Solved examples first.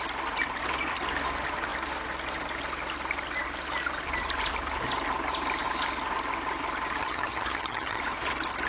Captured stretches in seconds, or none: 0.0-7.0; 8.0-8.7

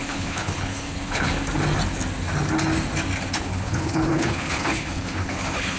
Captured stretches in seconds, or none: 1.3-3.3

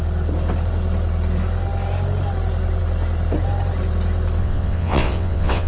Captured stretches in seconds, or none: 0.0-4.4

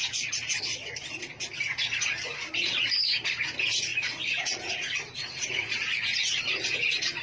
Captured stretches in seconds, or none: 0.0-3.9; 6.4-7.2

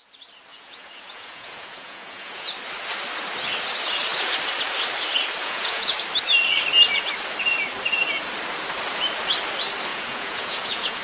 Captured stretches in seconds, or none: 0.0-0.5; 2.5-5.4; 5.9-9.9

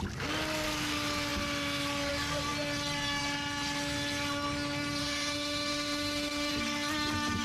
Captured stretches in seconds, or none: 0.0-5.0; 6.5-7.4